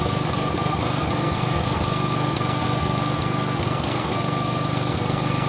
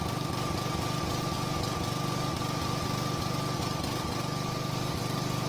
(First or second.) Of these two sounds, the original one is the second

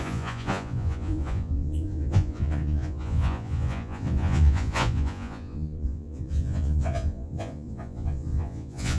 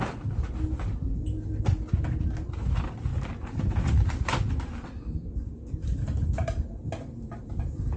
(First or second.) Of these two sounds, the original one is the second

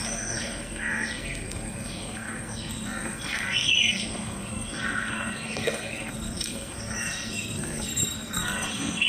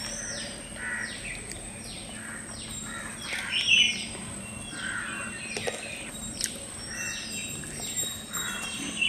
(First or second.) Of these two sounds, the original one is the second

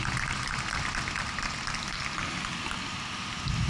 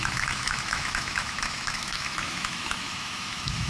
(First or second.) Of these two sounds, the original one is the first